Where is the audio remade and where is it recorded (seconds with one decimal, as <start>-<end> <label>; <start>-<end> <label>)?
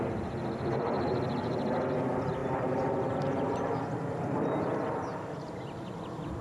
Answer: 0.0-6.4 recorded